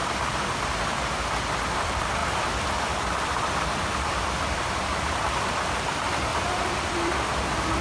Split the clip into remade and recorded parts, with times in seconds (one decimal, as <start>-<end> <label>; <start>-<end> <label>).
0.0-0.6 remade; 0.6-2.2 recorded; 2.2-5.3 remade; 5.3-6.3 recorded; 6.3-7.1 remade; 7.1-7.8 recorded